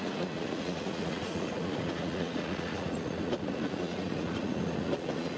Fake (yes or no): yes